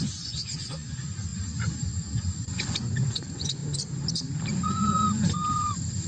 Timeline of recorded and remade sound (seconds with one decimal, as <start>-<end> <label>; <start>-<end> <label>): 0.0-1.3 remade; 1.3-2.2 recorded; 2.2-3.6 remade; 3.6-4.5 recorded; 4.5-6.1 remade